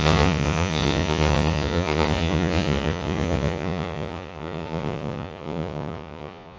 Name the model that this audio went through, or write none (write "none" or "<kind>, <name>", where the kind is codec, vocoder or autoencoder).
vocoder, Vocos